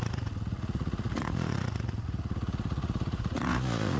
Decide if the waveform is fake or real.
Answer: fake